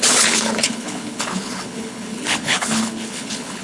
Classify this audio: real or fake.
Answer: fake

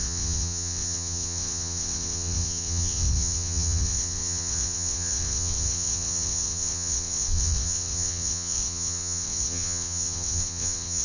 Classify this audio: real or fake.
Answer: fake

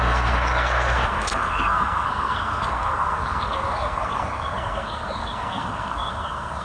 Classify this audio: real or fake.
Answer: fake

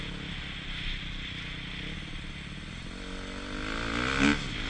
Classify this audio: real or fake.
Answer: real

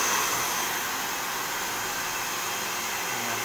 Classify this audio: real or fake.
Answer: real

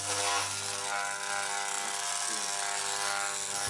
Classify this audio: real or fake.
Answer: real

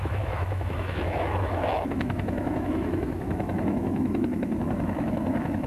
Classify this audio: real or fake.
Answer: fake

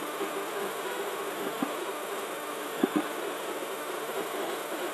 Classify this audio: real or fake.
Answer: fake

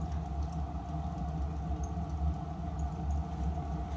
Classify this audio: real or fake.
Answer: real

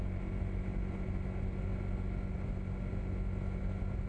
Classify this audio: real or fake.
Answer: real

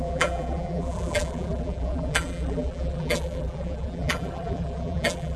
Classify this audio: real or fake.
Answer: fake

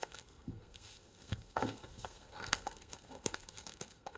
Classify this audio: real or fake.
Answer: fake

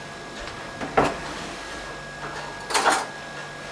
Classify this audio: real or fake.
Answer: real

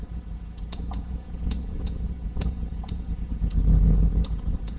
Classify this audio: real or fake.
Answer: fake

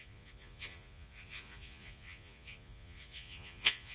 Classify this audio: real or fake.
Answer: fake